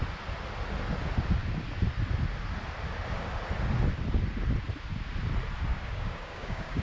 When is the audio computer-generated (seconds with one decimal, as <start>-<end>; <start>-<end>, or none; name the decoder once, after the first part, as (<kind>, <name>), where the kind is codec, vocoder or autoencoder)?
5.7-6.8 (codec, DAC)

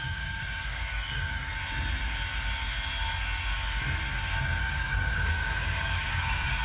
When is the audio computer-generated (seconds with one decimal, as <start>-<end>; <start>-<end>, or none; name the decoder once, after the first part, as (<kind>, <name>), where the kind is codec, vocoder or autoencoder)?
0.0-1.5 (codec, DAC); 4.6-6.6

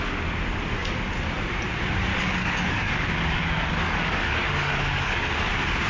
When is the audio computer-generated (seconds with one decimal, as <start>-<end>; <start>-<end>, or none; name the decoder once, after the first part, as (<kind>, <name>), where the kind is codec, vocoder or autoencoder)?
2.1-5.5 (codec, DAC)

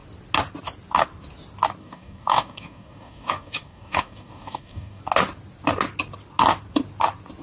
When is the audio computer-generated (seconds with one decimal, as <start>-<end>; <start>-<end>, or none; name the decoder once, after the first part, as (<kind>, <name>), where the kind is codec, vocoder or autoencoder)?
1.8-5.0 (codec, DAC)

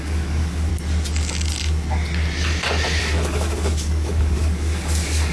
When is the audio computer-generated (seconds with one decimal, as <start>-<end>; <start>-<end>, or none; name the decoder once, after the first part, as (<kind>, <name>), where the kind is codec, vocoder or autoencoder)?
0.0-0.7 (codec, DAC); 3.0-5.3